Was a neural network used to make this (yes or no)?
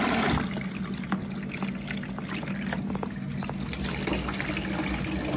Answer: no